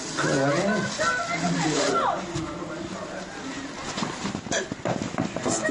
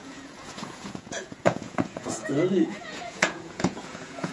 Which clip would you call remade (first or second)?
second